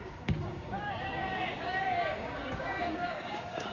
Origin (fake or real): fake